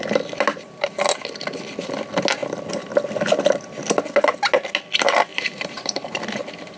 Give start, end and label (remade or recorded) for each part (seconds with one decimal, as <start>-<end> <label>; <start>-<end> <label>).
0.0-5.3 recorded; 5.3-6.2 remade; 6.2-6.8 recorded